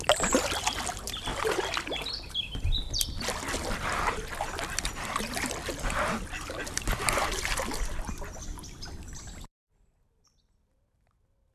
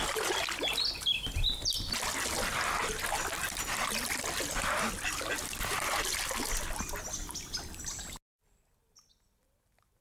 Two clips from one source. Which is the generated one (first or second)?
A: first